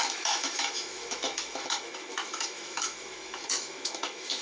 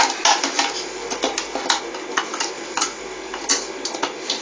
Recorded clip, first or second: second